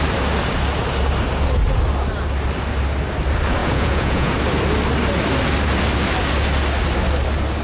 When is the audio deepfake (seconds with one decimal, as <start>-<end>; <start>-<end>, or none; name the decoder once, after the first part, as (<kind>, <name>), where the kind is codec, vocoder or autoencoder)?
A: 3.6-4.3 (vocoder, Vocos)